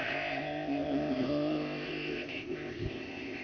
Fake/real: fake